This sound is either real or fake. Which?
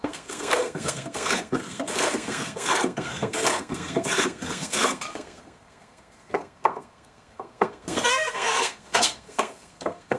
fake